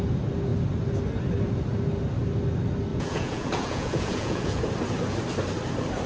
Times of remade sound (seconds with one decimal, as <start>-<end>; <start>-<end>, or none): 2.9-4.6